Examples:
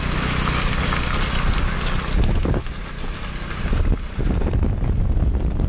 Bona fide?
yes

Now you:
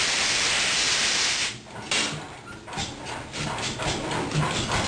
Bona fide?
yes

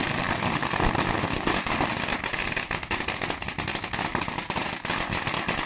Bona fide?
yes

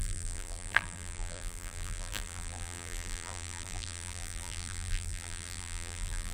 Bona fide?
no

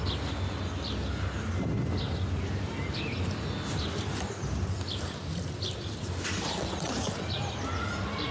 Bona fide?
yes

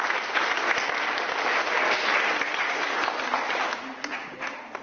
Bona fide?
yes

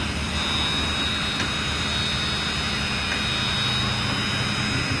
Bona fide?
yes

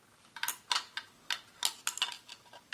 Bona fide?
yes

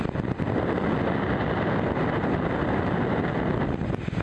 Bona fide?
yes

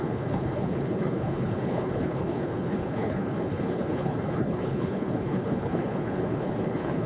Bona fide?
no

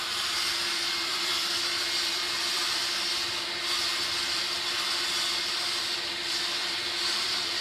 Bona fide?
no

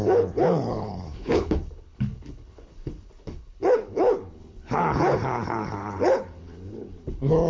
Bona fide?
no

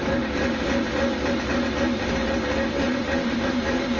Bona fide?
no